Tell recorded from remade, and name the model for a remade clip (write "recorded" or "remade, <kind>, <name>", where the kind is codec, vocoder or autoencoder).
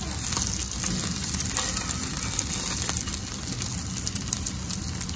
recorded